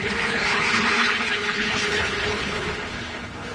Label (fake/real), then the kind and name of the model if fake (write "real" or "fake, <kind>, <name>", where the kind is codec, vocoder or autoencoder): fake, codec, HILCodec